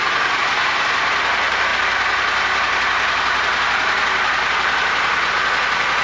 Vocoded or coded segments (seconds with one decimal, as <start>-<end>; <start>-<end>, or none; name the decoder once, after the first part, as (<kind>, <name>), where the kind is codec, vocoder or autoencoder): none